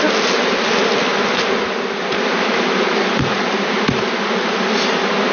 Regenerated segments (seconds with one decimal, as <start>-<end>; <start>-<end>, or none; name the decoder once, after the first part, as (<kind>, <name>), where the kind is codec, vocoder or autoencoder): none